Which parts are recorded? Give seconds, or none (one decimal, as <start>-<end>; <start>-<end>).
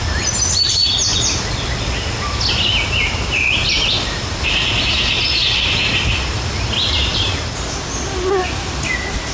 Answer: 0.0-9.3